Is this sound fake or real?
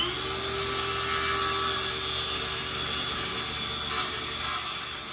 real